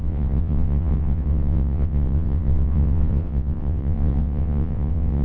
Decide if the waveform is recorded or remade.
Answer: remade